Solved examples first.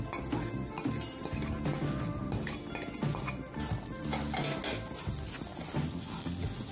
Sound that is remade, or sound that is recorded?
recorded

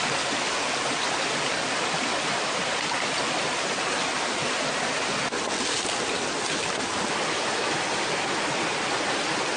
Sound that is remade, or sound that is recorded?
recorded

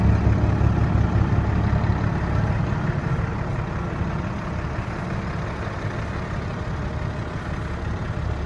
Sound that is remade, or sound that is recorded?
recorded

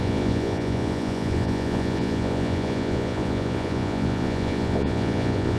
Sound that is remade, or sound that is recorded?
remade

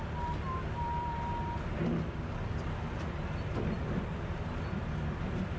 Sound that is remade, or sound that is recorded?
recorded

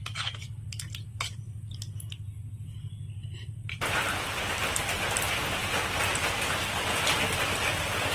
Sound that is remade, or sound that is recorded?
recorded